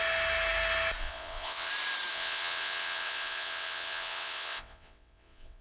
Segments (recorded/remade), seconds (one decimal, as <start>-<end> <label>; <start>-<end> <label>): 0.0-1.0 recorded; 1.0-1.7 remade; 1.7-2.1 recorded; 2.1-5.6 remade